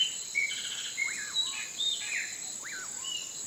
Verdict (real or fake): real